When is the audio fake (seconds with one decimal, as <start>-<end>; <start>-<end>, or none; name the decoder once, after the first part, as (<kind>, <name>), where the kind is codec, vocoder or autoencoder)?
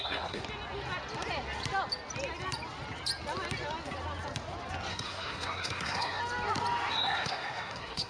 0.0-0.4 (codec, SNAC); 4.9-6.2; 6.9-8.1